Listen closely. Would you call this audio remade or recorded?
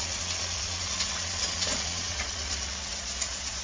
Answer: remade